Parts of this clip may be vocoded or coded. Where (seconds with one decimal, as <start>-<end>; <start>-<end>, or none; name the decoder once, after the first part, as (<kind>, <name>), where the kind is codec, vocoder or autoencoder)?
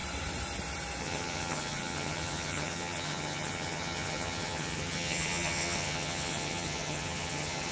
1.0-7.7 (vocoder, HiFi-GAN)